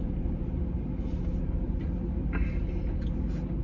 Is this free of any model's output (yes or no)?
yes